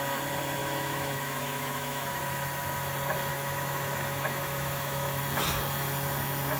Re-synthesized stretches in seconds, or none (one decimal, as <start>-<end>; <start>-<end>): 0.6-2.2; 3.3-5.2